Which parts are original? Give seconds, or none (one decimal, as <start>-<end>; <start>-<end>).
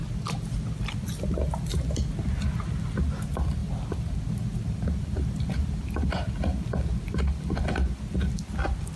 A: 0.0-9.0